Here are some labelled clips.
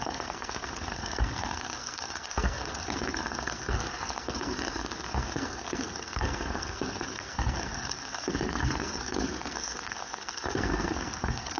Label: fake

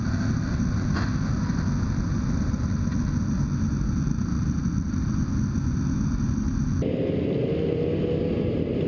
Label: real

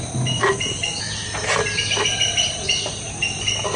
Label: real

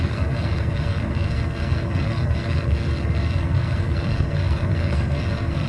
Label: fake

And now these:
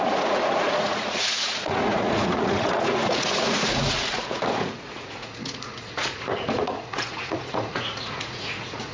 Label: fake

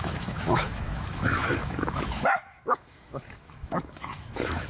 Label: fake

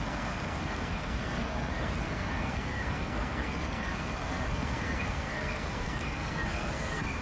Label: fake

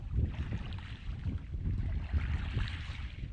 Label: fake